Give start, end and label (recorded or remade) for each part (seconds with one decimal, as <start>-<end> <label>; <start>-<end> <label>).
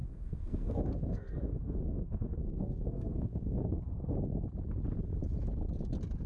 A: 0.0-3.8 remade; 3.8-6.3 recorded